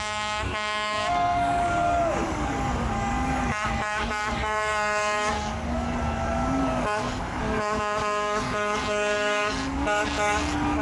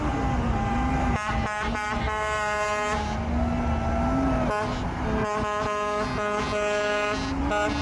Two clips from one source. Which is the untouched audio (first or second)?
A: second